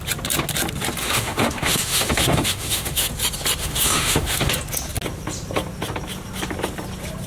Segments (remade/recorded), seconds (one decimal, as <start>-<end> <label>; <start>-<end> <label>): 0.0-1.0 recorded; 1.0-3.1 remade; 3.1-3.6 recorded; 3.6-4.5 remade; 4.5-7.3 recorded